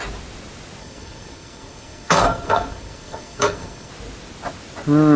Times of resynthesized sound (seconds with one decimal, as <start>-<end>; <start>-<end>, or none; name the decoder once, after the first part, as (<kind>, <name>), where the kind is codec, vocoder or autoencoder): 0.8-3.9 (codec, SNAC)